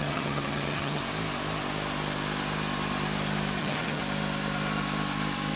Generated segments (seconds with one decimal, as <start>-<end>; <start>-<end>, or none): 0.0-1.0; 3.6-4.0